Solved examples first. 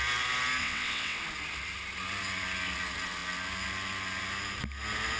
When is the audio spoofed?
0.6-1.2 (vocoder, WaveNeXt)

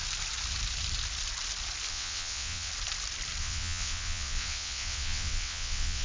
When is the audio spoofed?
1.9-2.7 (vocoder, WaveNeXt); 3.4-6.0

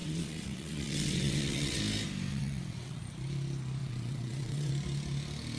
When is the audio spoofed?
0.0-1.8 (vocoder, WaveNeXt); 2.3-3.0; 3.8-4.7

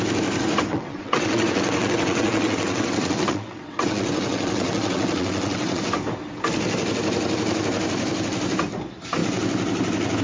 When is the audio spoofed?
0.7-5.8 (vocoder, WaveNeXt)